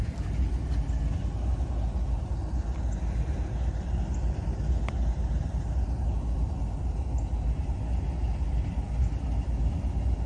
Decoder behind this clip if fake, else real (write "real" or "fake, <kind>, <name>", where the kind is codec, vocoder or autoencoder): real